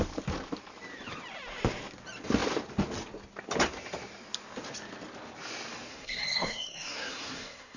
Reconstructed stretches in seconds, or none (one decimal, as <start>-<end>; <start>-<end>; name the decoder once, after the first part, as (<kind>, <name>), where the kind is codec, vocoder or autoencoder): 5.9-7.8 (codec, SNAC)